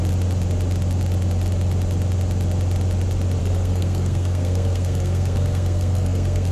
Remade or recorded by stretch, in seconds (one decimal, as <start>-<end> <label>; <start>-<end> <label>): 0.0-3.4 recorded; 3.4-6.5 remade